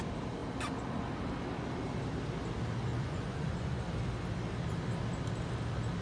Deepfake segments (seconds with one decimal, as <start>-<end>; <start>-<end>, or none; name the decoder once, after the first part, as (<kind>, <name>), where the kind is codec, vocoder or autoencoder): 2.9-3.8 (vocoder, Vocos)